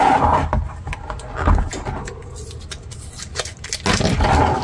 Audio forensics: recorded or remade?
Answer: recorded